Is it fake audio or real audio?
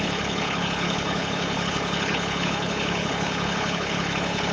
fake